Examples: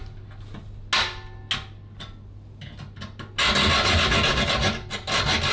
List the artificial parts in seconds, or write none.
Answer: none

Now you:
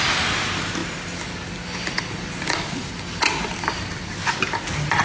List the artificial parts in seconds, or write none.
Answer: none

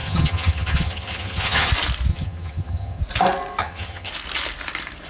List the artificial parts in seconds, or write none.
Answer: 0.0-1.7 (vocoder, HiFi-GAN); 2.1-3.0; 3.6-4.1

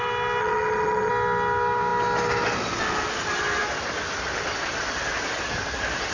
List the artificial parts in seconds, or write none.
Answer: 0.4-1.1 (vocoder, HiFi-GAN)

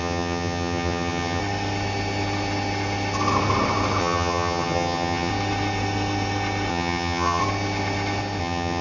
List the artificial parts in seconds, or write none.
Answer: 0.0-1.4 (vocoder, HiFi-GAN); 4.0-5.3; 6.7-7.4; 8.4-8.8

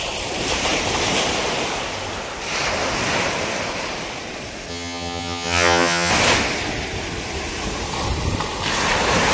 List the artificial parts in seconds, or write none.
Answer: 4.7-6.1 (vocoder, HiFi-GAN)